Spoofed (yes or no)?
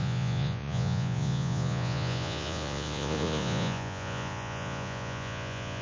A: yes